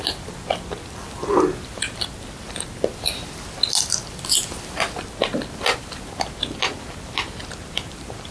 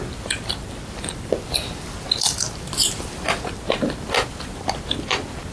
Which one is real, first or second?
first